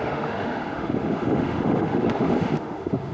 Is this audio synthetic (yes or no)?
yes